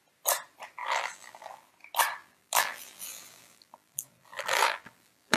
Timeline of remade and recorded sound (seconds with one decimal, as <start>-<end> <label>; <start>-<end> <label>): 0.0-0.8 recorded; 0.8-1.7 remade; 1.7-2.2 recorded; 2.2-5.4 remade